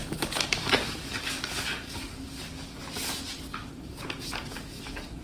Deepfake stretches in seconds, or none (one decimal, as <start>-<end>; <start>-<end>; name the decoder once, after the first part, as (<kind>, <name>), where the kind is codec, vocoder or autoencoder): 0.0-2.8 (codec, DAC); 3.5-5.2

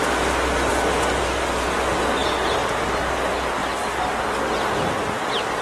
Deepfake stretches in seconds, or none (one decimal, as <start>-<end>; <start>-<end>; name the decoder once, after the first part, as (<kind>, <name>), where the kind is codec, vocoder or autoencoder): none

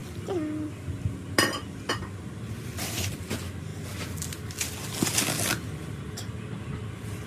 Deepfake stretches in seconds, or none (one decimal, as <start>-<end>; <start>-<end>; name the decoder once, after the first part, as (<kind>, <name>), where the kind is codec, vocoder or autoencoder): none

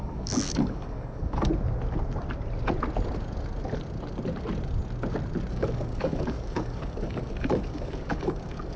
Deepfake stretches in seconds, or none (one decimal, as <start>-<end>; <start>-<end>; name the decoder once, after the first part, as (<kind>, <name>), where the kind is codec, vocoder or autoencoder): 0.0-1.5 (codec, DAC); 5.5-8.8

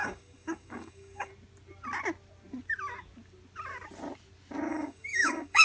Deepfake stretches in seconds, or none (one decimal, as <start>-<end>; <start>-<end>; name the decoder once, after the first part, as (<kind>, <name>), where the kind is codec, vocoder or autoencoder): 0.0-1.3 (codec, DAC); 4.7-5.6

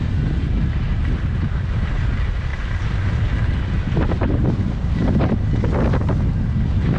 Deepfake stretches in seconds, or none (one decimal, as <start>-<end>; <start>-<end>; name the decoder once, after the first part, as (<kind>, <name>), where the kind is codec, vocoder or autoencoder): none

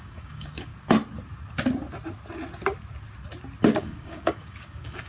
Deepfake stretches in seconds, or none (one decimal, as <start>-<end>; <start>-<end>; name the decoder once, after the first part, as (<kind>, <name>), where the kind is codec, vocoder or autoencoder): 0.0-0.7 (codec, DAC); 3.8-5.1

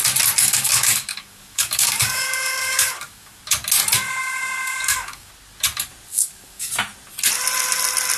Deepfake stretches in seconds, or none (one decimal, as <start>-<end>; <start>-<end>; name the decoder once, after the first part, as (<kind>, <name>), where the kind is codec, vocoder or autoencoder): 0.4-3.4 (codec, DAC); 4.2-5.3; 6.1-6.7